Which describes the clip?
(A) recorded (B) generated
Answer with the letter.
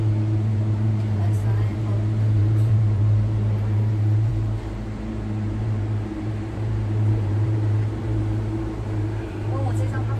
B